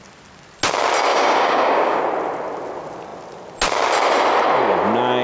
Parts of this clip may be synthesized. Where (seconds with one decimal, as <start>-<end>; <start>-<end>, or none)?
1.1-2.0